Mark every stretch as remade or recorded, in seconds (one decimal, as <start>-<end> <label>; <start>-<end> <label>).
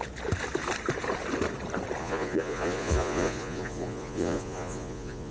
0.0-2.0 recorded; 2.0-5.3 remade